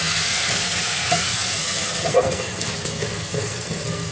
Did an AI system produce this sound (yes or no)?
yes